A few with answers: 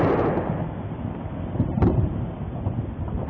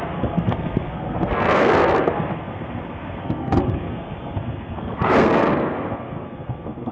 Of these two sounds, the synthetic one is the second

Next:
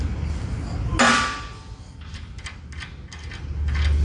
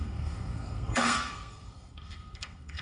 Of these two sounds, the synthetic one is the second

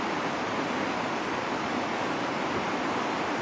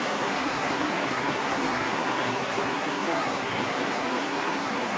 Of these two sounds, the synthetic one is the second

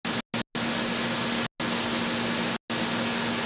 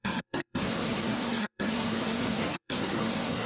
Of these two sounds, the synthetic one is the second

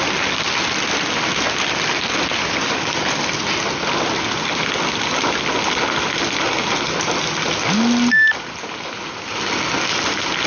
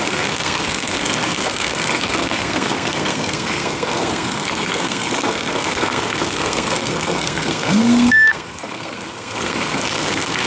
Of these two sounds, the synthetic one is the second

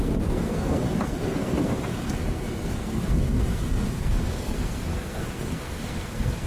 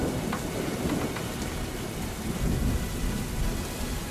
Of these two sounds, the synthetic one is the first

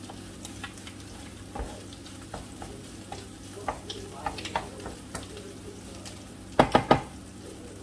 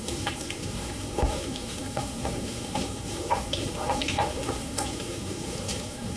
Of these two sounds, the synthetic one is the second